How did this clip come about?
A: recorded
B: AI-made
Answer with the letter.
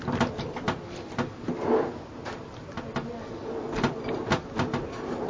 A